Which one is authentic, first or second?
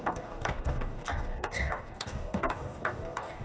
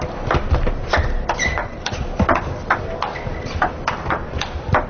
second